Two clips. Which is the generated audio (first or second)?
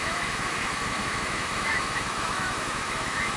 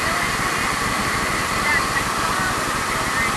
first